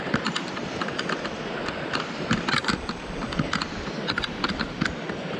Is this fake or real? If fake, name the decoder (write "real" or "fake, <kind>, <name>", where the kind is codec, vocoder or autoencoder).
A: fake, vocoder, BigVGAN v2